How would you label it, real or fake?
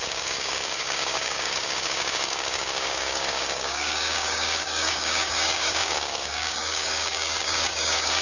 fake